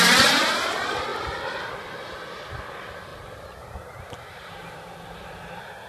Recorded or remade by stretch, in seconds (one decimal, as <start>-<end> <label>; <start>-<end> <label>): 0.0-3.1 recorded; 3.1-5.9 remade

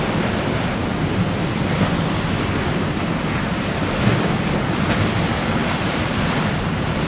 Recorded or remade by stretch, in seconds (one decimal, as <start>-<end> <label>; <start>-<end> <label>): 0.0-7.1 remade

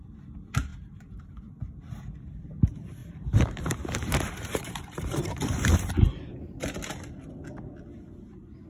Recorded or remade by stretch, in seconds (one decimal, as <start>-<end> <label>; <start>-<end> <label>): 0.0-0.7 recorded; 0.7-1.4 remade; 1.4-3.0 recorded; 3.0-6.8 remade; 6.8-8.7 recorded

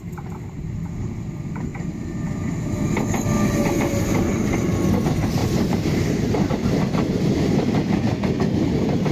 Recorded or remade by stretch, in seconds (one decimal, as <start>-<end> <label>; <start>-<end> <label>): 0.0-5.4 recorded; 5.4-6.8 remade; 6.8-9.1 recorded

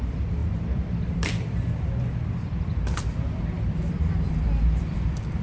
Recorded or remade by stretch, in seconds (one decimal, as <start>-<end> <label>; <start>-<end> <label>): 0.0-5.4 remade

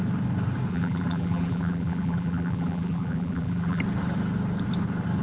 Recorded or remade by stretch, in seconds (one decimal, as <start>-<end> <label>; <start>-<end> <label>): 0.0-0.7 recorded; 0.7-3.8 remade; 3.8-5.2 recorded